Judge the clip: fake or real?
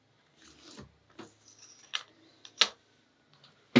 real